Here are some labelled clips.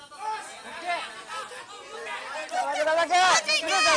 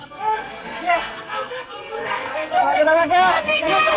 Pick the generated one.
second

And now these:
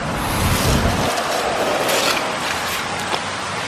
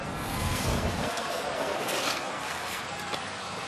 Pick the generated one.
second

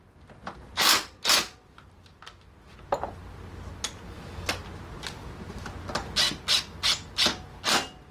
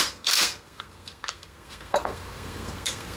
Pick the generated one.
second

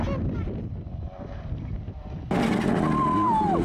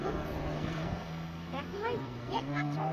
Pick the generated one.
second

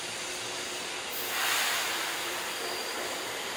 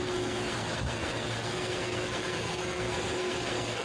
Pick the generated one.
second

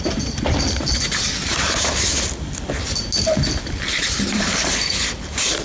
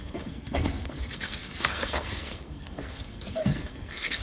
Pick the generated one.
second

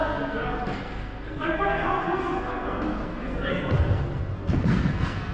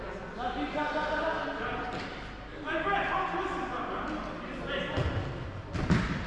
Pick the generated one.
first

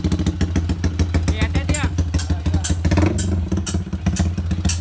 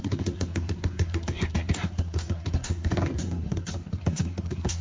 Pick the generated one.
second